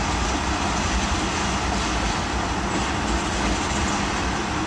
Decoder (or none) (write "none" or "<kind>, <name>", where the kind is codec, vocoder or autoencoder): none